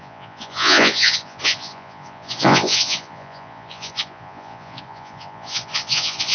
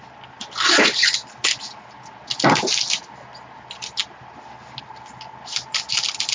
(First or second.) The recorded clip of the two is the second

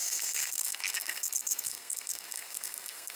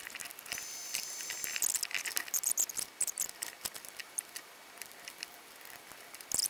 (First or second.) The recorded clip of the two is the second